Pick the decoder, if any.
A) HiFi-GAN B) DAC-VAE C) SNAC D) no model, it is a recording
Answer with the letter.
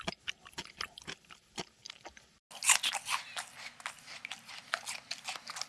D